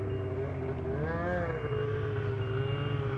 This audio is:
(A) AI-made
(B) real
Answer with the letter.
B